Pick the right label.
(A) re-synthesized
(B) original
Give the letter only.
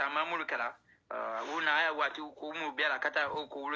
B